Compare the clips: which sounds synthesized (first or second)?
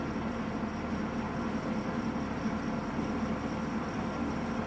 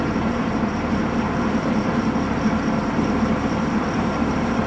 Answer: second